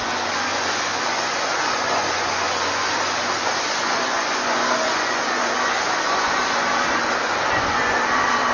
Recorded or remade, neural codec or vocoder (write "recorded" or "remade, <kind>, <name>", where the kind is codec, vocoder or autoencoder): remade, vocoder, Vocos